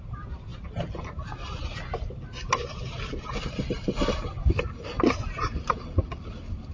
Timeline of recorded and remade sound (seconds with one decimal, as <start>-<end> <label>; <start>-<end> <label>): 0.0-6.7 recorded